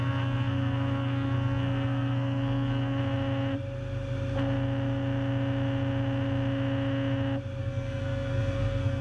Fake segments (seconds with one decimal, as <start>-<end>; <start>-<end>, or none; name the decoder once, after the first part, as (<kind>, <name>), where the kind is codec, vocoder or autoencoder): 0.0-3.0 (codec, SNAC); 7.6-9.0